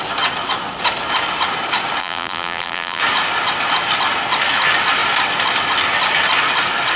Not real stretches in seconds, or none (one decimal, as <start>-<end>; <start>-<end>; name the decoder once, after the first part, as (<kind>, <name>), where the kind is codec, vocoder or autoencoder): 2.0-3.0 (vocoder, BigVGAN v2)